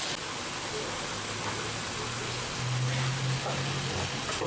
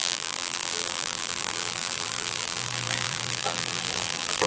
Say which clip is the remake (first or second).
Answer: second